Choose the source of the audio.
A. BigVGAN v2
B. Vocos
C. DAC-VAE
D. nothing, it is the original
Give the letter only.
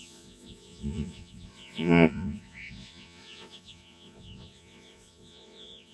B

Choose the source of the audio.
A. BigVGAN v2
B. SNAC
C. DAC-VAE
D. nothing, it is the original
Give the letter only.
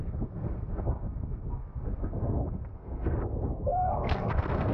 B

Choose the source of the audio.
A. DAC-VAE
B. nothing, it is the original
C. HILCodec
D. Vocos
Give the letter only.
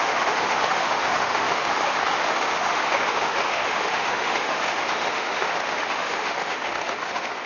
A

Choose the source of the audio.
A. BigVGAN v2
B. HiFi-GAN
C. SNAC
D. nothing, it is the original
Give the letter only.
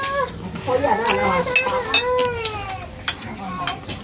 D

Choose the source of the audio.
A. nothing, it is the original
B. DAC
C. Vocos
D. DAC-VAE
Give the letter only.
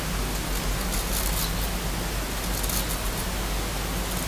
A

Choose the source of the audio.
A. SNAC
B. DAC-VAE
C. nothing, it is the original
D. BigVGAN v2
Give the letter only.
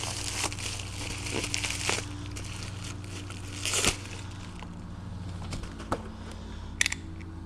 C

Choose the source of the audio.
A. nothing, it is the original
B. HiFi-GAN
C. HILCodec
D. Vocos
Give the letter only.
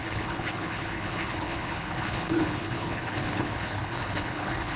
C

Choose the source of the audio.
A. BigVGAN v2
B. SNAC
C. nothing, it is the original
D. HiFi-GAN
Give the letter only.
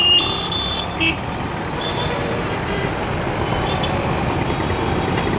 A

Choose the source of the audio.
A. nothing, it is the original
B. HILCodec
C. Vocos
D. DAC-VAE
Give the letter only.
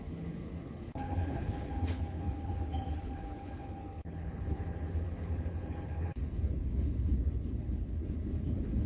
B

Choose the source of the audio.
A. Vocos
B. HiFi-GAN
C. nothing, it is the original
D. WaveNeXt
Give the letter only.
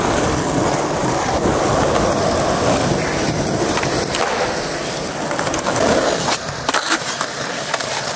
C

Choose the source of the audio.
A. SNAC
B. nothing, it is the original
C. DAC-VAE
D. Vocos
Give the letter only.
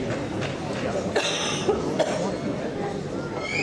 B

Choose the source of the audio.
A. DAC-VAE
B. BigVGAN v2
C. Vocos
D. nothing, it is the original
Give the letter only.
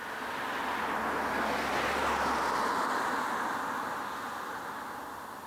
D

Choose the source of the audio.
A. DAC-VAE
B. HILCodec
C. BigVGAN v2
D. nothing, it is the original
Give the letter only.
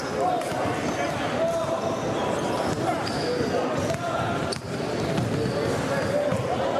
D